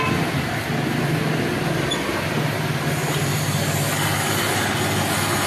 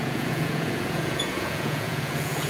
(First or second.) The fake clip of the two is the second